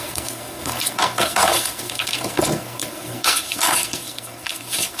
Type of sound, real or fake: fake